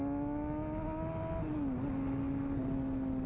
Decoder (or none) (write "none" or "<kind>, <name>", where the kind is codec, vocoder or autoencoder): none